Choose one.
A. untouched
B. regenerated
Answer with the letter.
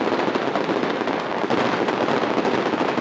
A